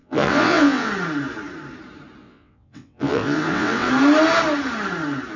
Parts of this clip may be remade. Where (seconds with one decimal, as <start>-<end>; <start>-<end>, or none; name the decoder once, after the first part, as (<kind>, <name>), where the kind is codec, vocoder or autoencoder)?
0.0-0.9 (vocoder, WaveNeXt); 2.2-3.9